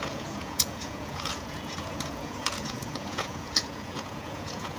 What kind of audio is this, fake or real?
fake